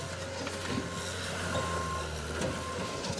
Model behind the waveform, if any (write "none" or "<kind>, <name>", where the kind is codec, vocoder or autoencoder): none